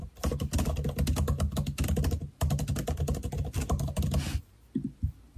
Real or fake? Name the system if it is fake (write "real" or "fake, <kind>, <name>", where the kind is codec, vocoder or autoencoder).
real